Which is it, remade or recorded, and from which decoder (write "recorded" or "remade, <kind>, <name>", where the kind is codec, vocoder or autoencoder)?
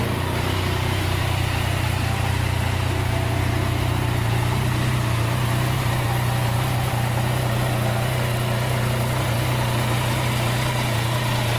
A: recorded